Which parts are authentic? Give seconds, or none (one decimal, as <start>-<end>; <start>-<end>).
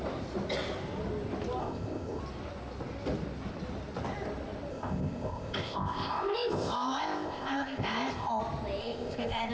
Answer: 0.0-1.6; 2.2-4.7; 8.4-8.8